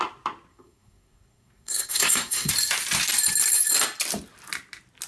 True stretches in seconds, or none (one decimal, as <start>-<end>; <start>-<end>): 0.0-0.5; 2.5-5.1